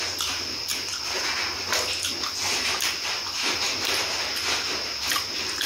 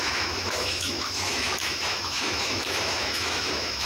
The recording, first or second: first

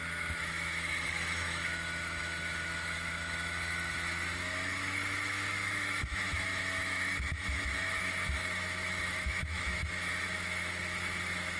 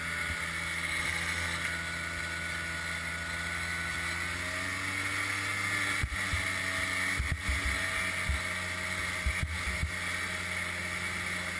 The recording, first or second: second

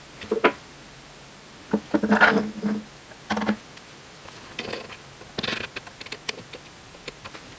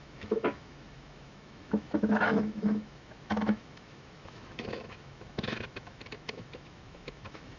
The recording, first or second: first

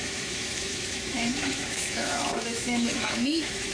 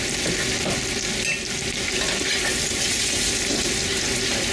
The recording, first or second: second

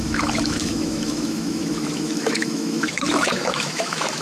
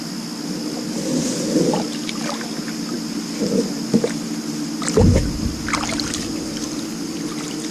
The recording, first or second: second